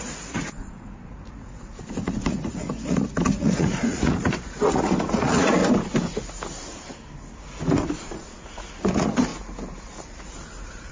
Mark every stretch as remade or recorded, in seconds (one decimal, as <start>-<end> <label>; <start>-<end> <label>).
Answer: 0.0-5.6 remade; 5.6-7.8 recorded; 7.8-9.3 remade; 9.3-10.0 recorded; 10.0-10.9 remade